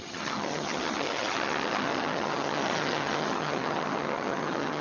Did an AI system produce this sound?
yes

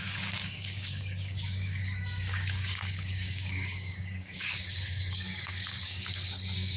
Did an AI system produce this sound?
yes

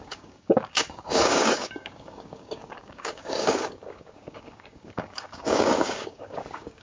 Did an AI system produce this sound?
yes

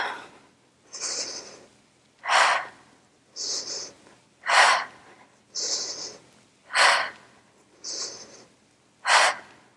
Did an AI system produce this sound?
no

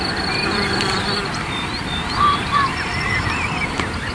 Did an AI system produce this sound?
no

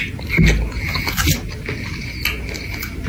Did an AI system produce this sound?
no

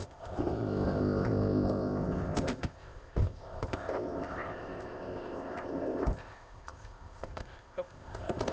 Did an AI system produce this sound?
yes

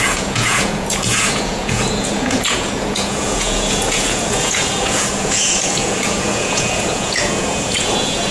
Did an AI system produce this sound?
yes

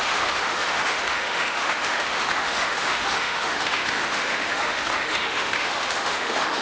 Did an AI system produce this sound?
yes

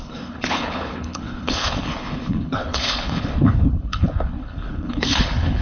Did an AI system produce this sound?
yes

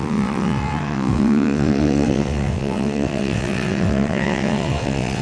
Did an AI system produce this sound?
yes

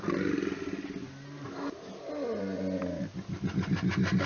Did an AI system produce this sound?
no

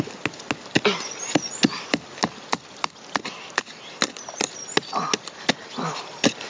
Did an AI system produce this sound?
no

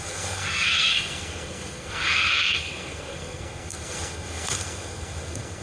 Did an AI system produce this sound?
yes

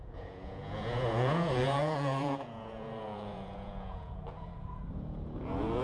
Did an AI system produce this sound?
yes